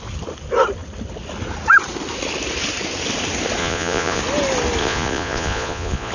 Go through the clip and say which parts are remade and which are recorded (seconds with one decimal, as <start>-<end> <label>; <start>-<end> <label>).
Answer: 0.0-3.6 recorded; 3.6-4.2 remade; 4.2-4.8 recorded; 4.8-6.1 remade